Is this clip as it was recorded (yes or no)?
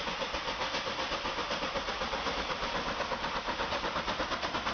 yes